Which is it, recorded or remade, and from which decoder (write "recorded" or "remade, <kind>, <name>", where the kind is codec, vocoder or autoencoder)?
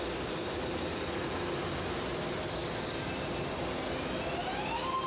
recorded